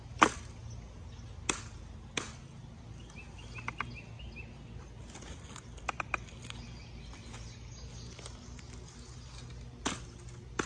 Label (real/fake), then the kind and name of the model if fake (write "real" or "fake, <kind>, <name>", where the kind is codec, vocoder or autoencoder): real